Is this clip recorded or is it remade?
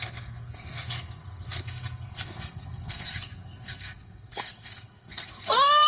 remade